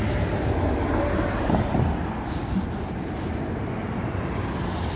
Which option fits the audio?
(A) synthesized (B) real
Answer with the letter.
B